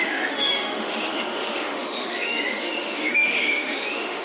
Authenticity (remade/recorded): remade